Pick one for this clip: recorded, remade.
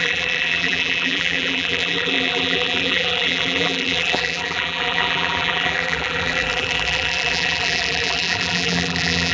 remade